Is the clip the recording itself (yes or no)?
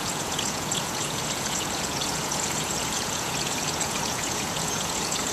no